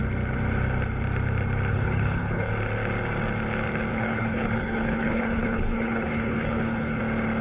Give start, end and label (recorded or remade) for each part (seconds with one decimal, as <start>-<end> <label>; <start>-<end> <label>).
0.0-1.7 recorded; 1.7-2.5 remade; 2.5-3.9 recorded; 3.9-7.0 remade; 7.0-7.4 recorded